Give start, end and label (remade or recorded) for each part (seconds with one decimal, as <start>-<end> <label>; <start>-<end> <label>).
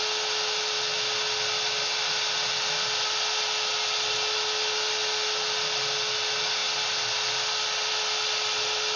0.0-9.0 recorded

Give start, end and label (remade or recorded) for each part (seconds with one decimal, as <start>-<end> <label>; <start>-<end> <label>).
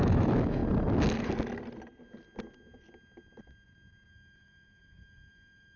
0.0-0.6 remade; 0.6-4.1 recorded; 4.1-5.8 remade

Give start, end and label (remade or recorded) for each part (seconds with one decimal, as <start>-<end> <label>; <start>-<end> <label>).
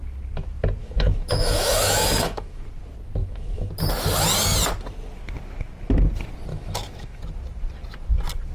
0.0-0.8 recorded; 0.8-2.6 remade; 2.6-3.2 recorded; 3.2-3.7 remade; 3.7-6.5 recorded; 6.5-7.2 remade; 7.2-8.5 recorded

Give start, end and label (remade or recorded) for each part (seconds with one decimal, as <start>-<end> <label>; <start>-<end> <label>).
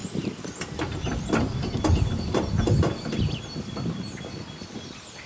0.0-5.3 remade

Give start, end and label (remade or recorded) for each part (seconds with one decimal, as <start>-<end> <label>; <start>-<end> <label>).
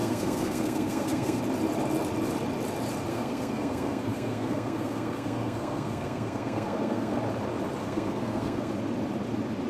0.0-1.4 remade; 1.4-3.1 recorded; 3.1-7.2 remade; 7.2-7.8 recorded; 7.8-8.7 remade; 8.7-9.7 recorded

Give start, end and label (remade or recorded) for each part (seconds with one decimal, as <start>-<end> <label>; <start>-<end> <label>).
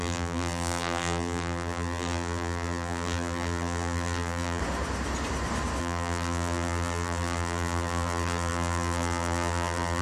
0.0-4.6 remade; 4.6-5.8 recorded; 5.8-10.0 remade